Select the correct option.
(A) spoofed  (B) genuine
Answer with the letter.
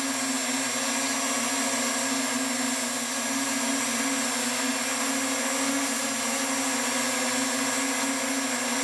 B